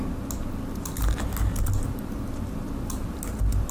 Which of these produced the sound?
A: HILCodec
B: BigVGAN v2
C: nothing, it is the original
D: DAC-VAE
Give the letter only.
C